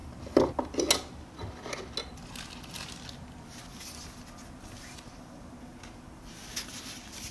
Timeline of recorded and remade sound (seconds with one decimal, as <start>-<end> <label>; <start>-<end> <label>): 0.0-7.3 recorded